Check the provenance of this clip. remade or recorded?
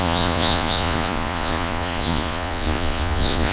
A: remade